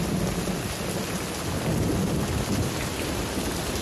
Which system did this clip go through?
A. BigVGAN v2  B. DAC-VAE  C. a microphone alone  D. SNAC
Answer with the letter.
C